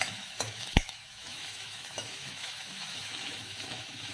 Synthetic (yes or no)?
yes